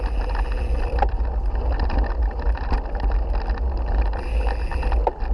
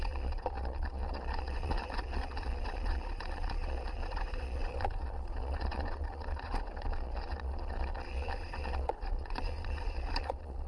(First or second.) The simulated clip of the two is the second